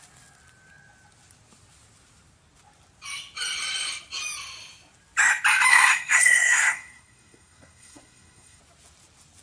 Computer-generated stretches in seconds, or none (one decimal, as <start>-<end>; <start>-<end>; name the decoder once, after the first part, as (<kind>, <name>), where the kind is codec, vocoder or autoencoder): 5.7-8.6 (codec, SNAC)

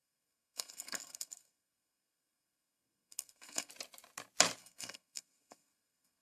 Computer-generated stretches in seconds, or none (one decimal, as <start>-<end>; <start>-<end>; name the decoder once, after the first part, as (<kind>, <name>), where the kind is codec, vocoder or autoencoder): 0.0-3.7 (codec, SNAC); 4.6-6.2